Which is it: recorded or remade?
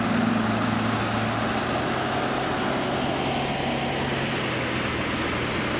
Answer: recorded